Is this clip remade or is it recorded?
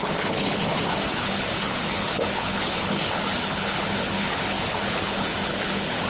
remade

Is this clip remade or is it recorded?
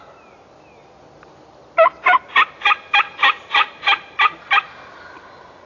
recorded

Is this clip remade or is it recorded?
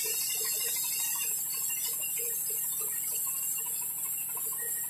recorded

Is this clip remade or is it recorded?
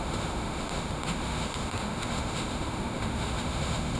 remade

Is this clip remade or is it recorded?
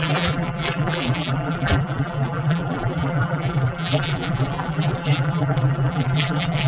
remade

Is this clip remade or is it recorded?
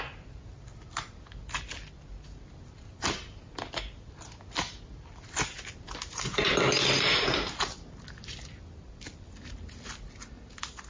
recorded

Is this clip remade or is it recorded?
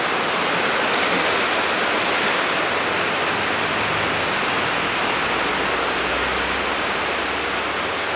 recorded